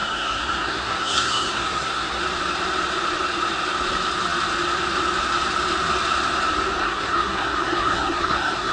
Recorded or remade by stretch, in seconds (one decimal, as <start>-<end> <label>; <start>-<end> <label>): 0.0-2.2 remade; 2.2-6.8 recorded; 6.8-8.7 remade